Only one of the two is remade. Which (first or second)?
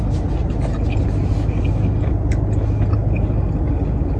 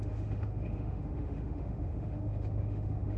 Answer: second